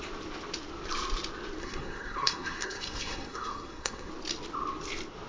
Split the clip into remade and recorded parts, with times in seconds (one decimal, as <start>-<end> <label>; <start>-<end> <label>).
0.0-1.6 recorded; 1.6-4.1 remade; 4.1-5.3 recorded